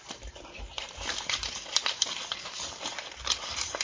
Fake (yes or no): yes